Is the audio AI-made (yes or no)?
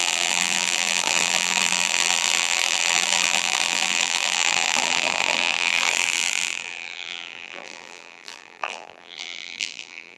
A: yes